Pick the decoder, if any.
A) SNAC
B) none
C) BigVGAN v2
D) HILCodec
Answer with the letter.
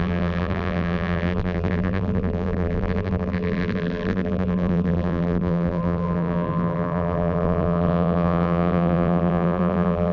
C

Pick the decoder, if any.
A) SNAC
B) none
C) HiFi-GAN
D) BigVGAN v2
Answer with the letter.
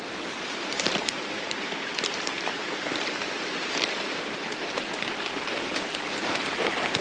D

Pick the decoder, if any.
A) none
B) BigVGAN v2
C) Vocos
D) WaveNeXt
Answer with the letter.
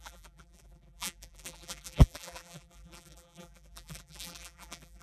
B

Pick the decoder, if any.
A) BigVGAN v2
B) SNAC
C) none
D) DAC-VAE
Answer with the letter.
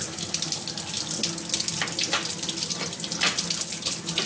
A